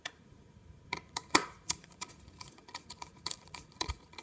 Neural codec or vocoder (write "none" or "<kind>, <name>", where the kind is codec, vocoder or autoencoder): vocoder, Vocos